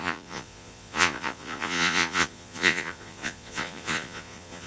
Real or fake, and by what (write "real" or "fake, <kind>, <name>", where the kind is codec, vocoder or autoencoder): fake, vocoder, Vocos